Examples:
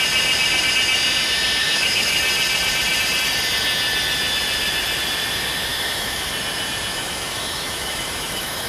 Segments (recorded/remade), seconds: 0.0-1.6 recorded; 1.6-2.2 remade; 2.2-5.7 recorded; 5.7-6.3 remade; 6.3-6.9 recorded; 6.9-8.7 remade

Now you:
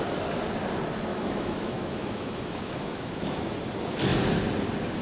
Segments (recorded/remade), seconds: 0.0-1.1 recorded; 1.1-3.5 remade; 3.5-5.0 recorded

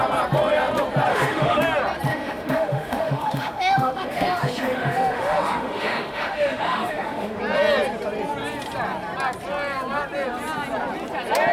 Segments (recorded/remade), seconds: 0.0-1.1 recorded; 1.1-1.6 remade; 1.6-2.1 recorded; 2.1-7.4 remade; 7.4-11.5 recorded

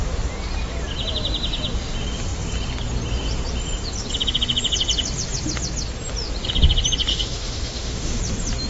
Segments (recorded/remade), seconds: 0.0-7.1 recorded; 7.1-8.2 remade; 8.2-8.7 recorded

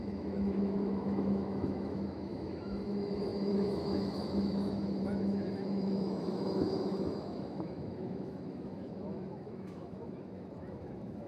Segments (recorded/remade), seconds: 0.0-11.3 remade

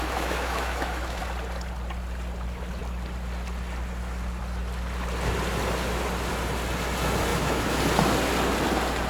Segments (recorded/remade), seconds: 0.0-1.2 remade; 1.2-7.3 recorded; 7.3-7.8 remade; 7.8-9.1 recorded